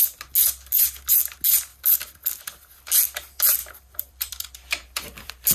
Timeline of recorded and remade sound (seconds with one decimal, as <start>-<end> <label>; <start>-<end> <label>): 0.0-1.7 recorded; 1.7-2.4 remade; 2.4-3.6 recorded; 3.6-5.5 remade

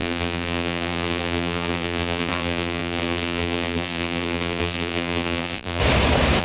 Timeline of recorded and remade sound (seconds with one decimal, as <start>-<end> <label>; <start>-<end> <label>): 0.0-5.8 remade; 5.8-6.4 recorded

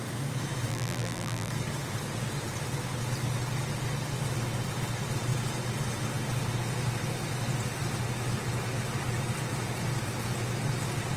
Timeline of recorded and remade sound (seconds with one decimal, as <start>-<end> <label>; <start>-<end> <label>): 0.0-0.7 recorded; 0.7-1.5 remade; 1.5-11.2 recorded

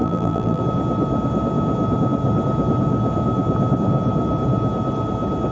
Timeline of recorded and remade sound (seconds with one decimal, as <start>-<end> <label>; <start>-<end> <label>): 0.0-0.6 remade; 0.6-5.5 recorded

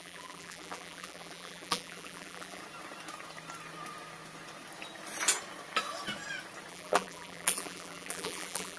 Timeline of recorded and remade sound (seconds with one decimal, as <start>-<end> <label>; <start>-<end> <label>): 0.0-2.6 remade; 2.6-6.7 recorded; 6.7-8.8 remade

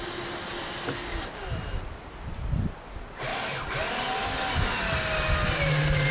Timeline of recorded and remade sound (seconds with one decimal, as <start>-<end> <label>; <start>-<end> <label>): 0.0-3.3 remade; 3.3-3.9 recorded; 3.9-6.1 remade

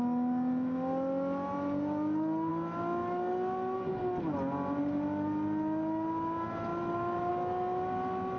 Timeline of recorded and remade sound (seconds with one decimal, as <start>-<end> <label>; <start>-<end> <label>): 0.0-6.7 recorded; 6.7-7.3 remade; 7.3-8.4 recorded